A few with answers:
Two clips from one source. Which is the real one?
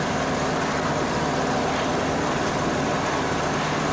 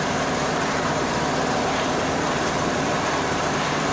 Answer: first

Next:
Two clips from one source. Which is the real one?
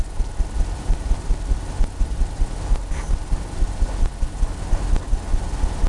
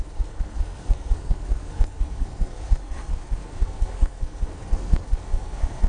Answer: first